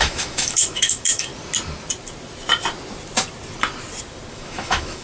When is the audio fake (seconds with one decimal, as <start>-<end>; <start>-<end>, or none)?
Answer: 0.0-1.3; 4.3-5.0

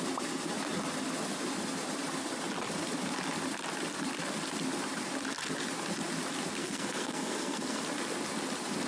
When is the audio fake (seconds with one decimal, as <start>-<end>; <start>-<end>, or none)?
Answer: 6.6-7.8

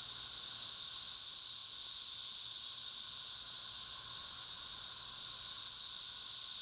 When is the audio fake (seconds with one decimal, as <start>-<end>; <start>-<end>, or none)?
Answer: 4.2-4.8

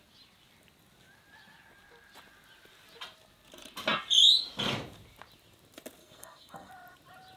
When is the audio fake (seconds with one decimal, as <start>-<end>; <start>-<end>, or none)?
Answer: 6.0-6.7